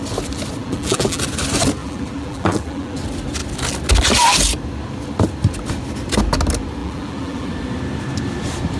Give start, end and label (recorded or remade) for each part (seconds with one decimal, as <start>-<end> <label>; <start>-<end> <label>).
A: 0.0-0.6 recorded; 0.6-1.2 remade; 1.2-1.8 recorded; 1.8-3.0 remade; 3.0-6.8 recorded; 6.8-7.5 remade; 7.5-8.8 recorded